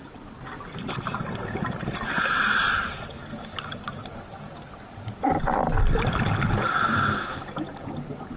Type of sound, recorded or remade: recorded